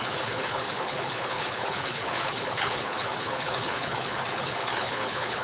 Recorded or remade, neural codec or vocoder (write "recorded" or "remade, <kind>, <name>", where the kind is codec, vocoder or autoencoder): remade, codec, HILCodec